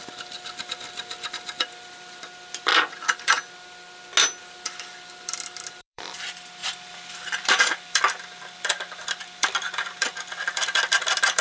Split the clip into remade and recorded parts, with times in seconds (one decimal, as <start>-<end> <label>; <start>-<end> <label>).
0.0-2.7 remade; 2.7-4.4 recorded; 4.4-11.4 remade